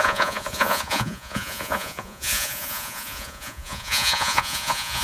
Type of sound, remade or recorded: remade